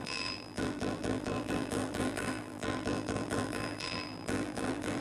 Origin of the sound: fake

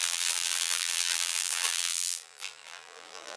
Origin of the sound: fake